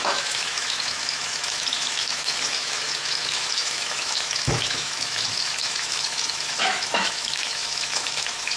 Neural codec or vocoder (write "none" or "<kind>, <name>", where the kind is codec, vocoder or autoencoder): autoencoder, DAC-VAE